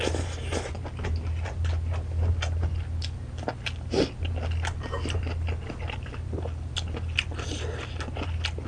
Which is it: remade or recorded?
recorded